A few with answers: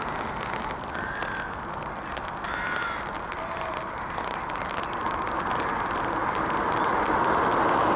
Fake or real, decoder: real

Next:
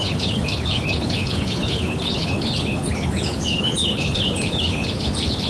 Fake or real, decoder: fake, codec, HILCodec